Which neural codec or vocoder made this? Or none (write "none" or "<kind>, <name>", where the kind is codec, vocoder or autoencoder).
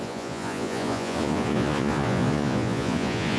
vocoder, Vocos